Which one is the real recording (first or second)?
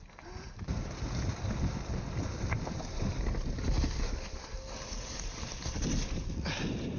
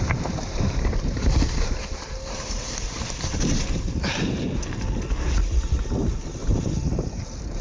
first